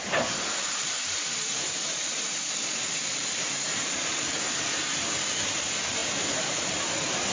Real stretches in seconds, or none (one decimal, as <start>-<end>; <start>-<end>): none